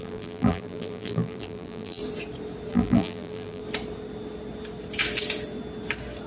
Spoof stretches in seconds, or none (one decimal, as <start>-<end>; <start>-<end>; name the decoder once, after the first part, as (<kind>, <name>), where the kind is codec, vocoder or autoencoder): 0.0-2.0 (vocoder, BigVGAN v2); 2.7-3.6

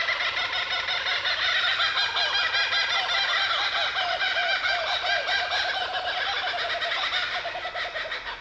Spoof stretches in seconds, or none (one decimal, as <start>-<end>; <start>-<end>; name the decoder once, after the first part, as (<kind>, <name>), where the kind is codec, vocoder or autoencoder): none

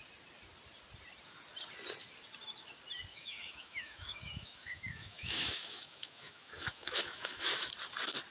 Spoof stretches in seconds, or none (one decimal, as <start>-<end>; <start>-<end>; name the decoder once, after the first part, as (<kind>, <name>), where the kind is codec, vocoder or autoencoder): 3.1-7.7 (autoencoder, DAC-VAE)